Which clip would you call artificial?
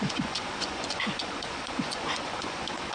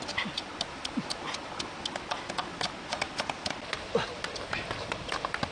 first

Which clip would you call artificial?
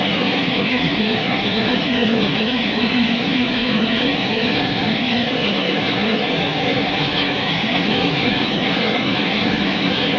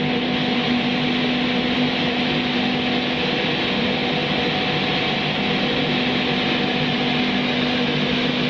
first